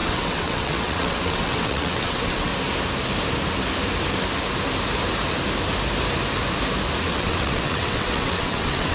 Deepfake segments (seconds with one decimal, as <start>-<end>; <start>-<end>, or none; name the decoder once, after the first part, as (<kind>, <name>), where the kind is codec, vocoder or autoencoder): 0.0-2.5 (vocoder, WaveNeXt); 7.0-8.9